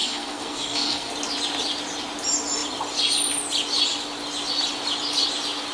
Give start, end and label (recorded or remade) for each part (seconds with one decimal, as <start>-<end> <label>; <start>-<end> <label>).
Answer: 0.0-1.1 remade; 1.1-5.7 recorded